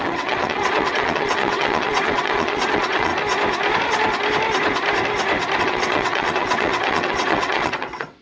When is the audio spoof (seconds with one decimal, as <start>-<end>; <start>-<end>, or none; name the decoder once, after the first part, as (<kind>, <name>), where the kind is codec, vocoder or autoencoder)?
0.0-3.1 (vocoder, WaveNeXt); 5.6-8.2